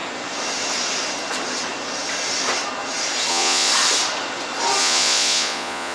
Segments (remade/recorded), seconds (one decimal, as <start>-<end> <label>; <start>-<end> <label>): 0.0-3.3 recorded; 3.3-3.7 remade; 3.7-4.8 recorded; 4.8-5.9 remade